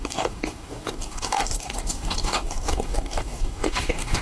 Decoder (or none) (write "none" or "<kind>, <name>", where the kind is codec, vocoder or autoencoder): codec, DAC